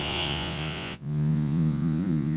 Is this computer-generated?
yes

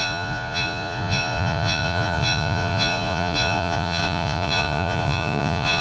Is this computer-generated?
yes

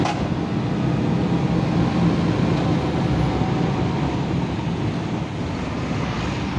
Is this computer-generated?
no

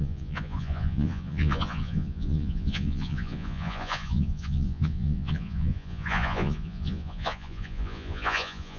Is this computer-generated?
yes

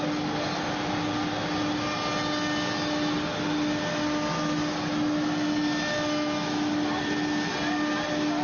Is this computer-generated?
no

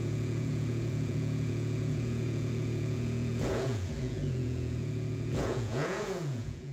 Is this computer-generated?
yes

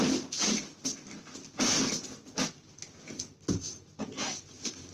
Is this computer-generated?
no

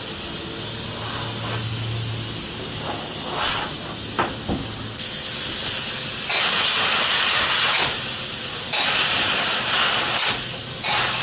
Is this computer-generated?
no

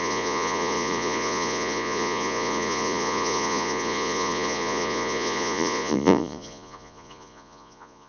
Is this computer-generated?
yes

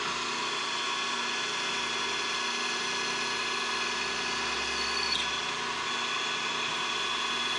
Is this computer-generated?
no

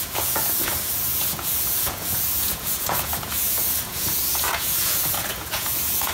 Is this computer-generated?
yes